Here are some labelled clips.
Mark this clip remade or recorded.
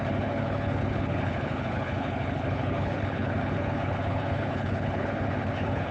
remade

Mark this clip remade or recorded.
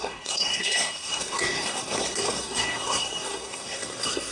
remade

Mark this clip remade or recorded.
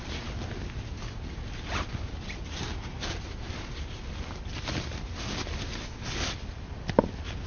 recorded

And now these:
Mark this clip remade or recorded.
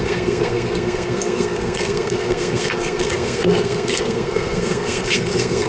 remade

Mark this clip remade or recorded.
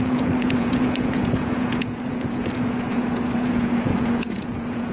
remade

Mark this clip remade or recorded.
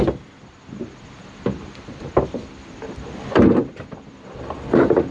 recorded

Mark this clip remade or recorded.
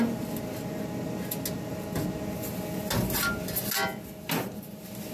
recorded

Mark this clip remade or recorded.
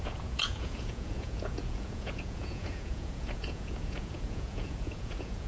remade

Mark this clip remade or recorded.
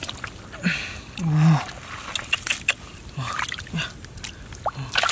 recorded